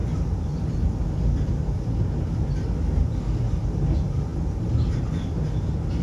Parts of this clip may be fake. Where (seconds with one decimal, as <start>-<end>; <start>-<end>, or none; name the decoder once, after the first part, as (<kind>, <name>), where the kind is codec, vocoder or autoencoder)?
none